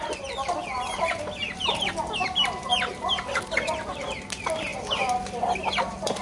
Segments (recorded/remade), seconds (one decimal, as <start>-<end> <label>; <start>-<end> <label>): 0.0-1.4 recorded; 1.4-1.9 remade; 1.9-2.7 recorded; 2.7-3.4 remade; 3.4-6.2 recorded